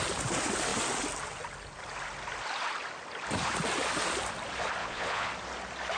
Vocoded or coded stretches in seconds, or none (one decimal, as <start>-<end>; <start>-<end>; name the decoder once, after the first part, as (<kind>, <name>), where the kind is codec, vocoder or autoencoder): 4.8-5.3 (vocoder, Vocos)